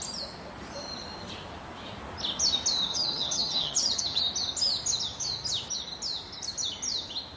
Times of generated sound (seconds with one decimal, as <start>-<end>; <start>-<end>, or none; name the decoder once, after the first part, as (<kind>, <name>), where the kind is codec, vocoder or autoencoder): 2.9-4.2 (vocoder, HiFi-GAN)